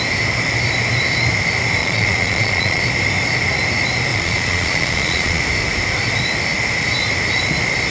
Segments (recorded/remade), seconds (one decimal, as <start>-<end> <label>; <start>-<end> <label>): 0.0-1.8 recorded; 1.8-2.8 remade; 2.8-4.1 recorded; 4.1-5.4 remade; 5.4-7.9 recorded